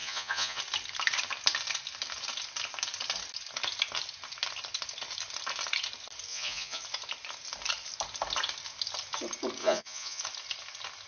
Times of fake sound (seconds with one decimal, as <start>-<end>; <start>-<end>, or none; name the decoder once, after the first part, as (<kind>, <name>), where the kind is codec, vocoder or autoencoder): 0.0-0.6 (vocoder, Vocos); 6.3-6.8; 9.6-10.2